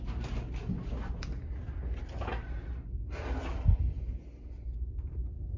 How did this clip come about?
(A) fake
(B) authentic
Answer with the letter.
B